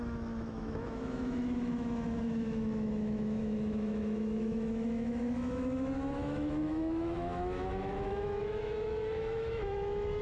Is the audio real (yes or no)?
no